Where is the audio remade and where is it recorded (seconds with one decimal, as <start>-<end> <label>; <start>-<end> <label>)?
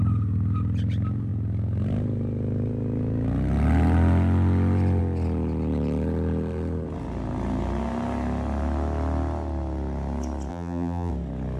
0.0-10.5 recorded; 10.5-11.1 remade; 11.1-11.6 recorded